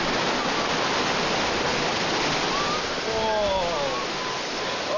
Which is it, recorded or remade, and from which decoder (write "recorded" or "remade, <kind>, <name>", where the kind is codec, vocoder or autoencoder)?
recorded